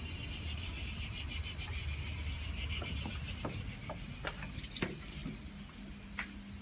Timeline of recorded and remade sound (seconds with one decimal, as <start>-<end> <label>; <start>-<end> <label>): 0.0-1.8 remade; 1.8-2.9 recorded; 2.9-5.2 remade; 5.2-6.6 recorded

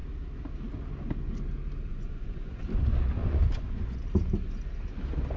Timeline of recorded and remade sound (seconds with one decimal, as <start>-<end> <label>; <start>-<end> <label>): 0.0-1.9 recorded; 1.9-2.6 remade; 2.6-3.2 recorded; 3.2-4.0 remade; 4.0-5.4 recorded